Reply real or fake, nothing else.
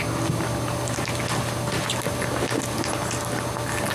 real